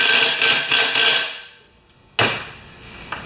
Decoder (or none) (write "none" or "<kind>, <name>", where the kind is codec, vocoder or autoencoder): none